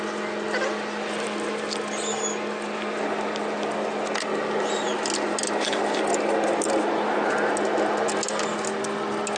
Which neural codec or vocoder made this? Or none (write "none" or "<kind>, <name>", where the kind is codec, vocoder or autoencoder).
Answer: none